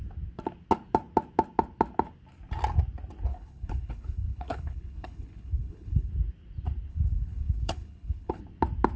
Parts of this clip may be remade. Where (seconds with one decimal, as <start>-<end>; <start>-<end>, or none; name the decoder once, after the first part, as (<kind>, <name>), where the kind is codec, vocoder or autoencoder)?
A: 3.3-6.1 (codec, HILCodec); 6.9-8.4